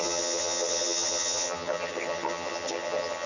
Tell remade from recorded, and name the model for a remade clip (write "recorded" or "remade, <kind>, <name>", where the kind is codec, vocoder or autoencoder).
remade, vocoder, HiFi-GAN